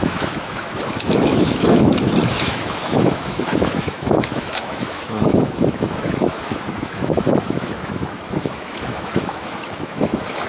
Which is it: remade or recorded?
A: remade